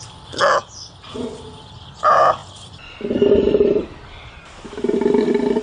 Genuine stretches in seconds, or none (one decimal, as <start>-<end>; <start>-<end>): 0.0-5.6